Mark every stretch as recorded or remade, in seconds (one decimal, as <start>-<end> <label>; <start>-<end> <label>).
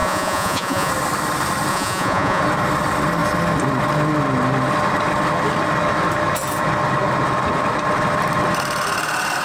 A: 0.0-0.9 remade; 0.9-1.7 recorded; 1.7-2.4 remade; 2.4-9.4 recorded